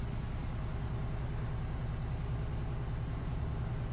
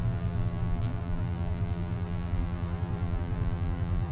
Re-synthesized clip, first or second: second